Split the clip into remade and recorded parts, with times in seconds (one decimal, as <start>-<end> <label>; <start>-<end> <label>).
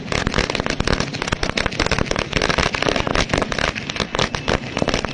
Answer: 0.0-5.1 recorded